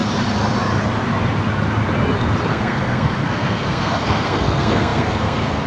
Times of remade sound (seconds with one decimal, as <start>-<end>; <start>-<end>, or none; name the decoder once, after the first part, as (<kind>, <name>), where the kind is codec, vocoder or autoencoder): 2.5-5.7 (codec, SNAC)